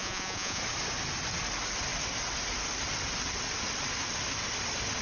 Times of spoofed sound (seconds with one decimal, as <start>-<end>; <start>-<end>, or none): 0.0-0.6